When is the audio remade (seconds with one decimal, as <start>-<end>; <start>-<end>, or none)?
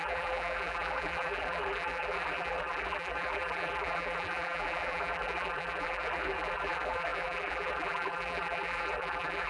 0.0-9.5